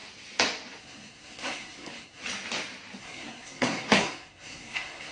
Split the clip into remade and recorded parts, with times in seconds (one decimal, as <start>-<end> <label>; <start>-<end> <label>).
0.0-0.8 recorded; 0.8-2.2 remade; 2.2-3.0 recorded; 3.0-5.1 remade